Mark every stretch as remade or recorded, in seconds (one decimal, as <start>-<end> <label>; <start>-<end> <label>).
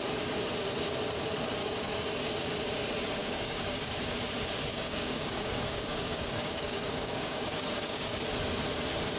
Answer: 0.0-1.6 recorded; 1.6-2.1 remade; 2.1-3.2 recorded; 3.2-3.9 remade; 3.9-4.7 recorded; 4.7-8.2 remade; 8.2-9.2 recorded